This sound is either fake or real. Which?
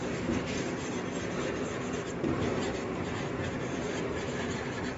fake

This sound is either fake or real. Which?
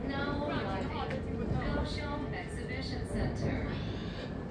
real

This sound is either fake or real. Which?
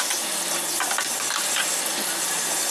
real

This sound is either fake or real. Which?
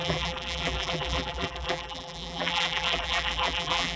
fake